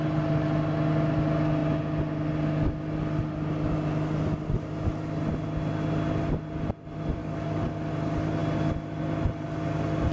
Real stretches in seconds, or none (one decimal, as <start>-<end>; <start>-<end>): 0.0-7.2; 7.7-10.1